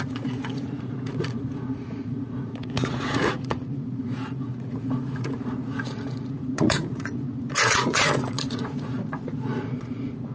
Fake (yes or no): yes